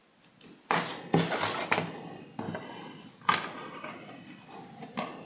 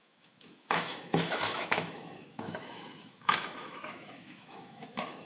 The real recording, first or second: first